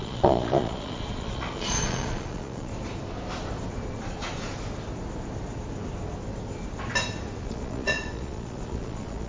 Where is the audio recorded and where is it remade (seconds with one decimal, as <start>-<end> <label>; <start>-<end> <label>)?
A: 0.0-2.7 remade; 2.7-7.4 recorded; 7.4-9.3 remade